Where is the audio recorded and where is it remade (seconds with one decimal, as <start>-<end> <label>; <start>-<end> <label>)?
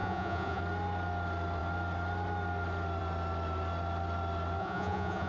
0.0-0.6 remade; 0.6-4.6 recorded; 4.6-5.3 remade